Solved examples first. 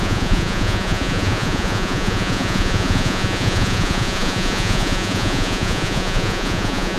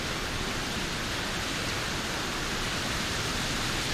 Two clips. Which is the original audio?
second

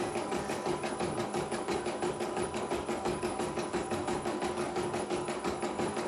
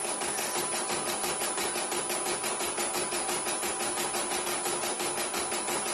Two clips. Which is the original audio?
second